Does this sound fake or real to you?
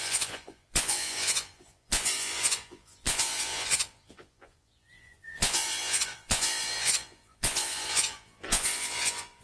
fake